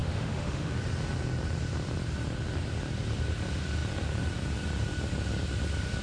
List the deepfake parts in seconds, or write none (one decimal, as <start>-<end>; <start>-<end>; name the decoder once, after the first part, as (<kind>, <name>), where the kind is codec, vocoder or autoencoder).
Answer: 0.0-0.7 (autoencoder, DAC-VAE)